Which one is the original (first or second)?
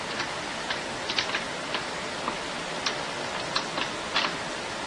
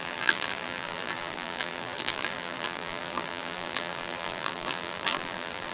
first